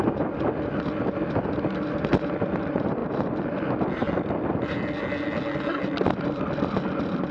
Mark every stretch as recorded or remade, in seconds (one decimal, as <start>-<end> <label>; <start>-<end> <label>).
0.0-7.3 recorded